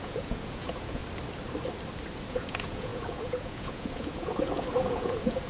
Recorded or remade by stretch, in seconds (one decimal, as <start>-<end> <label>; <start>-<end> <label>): 0.0-1.0 remade; 1.0-2.3 recorded; 2.3-5.5 remade